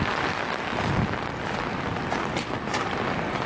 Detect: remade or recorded recorded